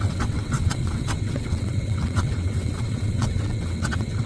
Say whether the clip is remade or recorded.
remade